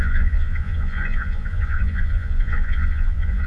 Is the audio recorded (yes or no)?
no